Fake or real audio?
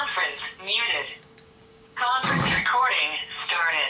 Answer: fake